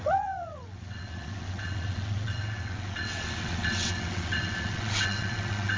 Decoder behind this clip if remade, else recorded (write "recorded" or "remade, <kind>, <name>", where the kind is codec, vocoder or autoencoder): remade, vocoder, WaveNeXt